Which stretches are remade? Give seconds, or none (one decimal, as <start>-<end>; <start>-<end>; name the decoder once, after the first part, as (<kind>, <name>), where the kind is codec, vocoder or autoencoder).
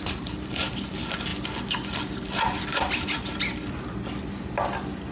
none